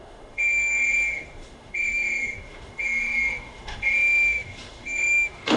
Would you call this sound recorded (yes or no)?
no